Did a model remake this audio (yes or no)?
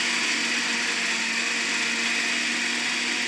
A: no